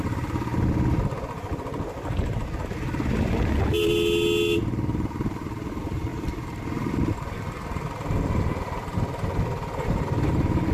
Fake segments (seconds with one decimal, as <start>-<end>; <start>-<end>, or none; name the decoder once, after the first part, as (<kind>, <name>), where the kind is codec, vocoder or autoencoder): 0.0-0.5 (vocoder, BigVGAN v2); 4.6-10.7